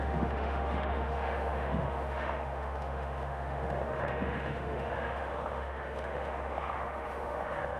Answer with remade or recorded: remade